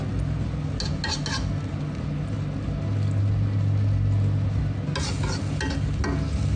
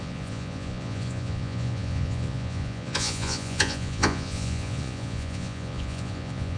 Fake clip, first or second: second